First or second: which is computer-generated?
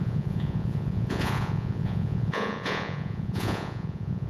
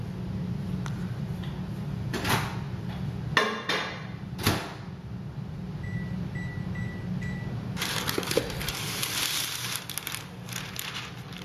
first